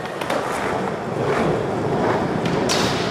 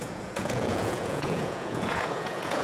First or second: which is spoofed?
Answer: second